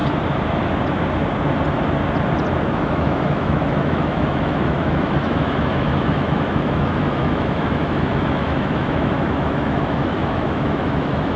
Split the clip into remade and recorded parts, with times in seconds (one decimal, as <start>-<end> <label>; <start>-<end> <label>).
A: 0.0-2.7 recorded; 2.7-11.4 remade